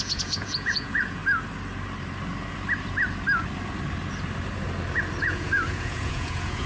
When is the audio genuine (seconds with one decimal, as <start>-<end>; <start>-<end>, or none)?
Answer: 1.2-5.2